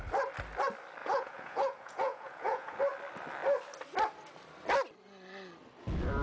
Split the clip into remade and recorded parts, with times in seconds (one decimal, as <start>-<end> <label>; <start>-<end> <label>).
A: 0.0-1.0 recorded; 1.0-2.8 remade; 2.8-6.2 recorded